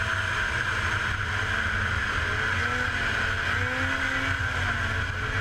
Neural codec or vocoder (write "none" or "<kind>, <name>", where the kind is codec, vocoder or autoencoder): none